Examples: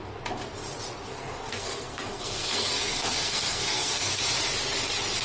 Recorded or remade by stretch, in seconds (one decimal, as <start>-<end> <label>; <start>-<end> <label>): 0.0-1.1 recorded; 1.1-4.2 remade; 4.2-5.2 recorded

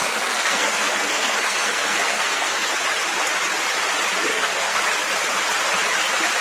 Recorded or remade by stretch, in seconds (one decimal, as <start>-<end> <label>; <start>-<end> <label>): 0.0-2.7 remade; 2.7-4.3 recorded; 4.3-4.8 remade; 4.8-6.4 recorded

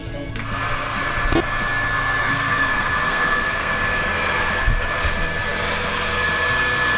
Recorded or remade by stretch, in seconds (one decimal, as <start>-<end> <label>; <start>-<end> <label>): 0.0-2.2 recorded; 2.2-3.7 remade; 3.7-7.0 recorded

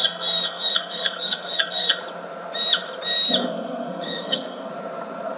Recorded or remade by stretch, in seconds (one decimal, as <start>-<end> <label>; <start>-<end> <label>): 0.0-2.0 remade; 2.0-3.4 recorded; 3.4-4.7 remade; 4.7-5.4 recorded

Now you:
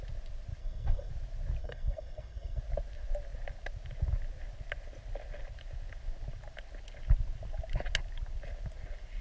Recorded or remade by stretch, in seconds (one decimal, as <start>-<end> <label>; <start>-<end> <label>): 0.0-0.6 recorded; 0.6-1.1 remade; 1.1-1.6 recorded; 1.6-2.6 remade; 2.6-9.2 recorded

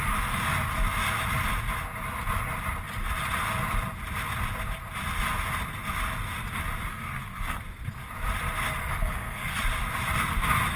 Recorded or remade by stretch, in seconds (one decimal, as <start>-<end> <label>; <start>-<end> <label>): 0.0-6.9 recorded; 6.9-7.6 remade; 7.6-8.8 recorded; 8.8-9.6 remade; 9.6-10.8 recorded